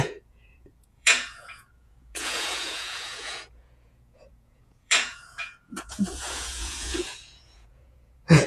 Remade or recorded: remade